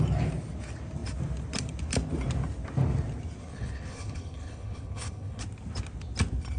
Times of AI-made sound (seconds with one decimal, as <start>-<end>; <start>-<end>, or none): 3.4-5.4

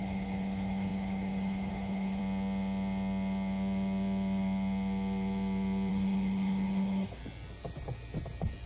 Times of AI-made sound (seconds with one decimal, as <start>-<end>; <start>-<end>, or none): 0.0-2.2; 5.9-7.2

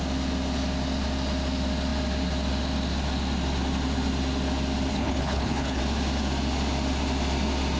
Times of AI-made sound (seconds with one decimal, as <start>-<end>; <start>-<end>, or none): 4.9-5.8

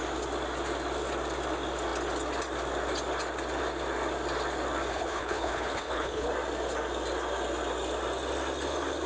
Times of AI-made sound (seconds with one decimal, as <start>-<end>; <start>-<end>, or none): 4.9-6.3

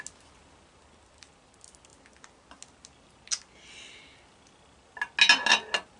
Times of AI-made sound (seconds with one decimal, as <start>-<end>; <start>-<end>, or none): none

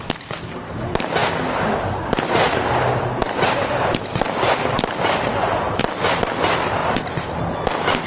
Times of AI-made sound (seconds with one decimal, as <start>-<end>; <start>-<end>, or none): none

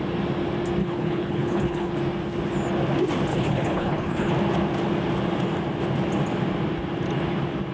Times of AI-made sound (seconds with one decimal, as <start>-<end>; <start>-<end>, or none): 0.8-1.9; 3.3-4.3

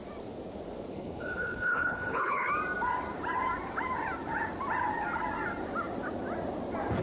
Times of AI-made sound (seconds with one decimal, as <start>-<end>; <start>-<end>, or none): 0.9-2.5